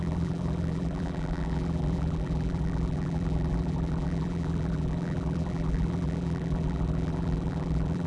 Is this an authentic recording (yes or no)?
no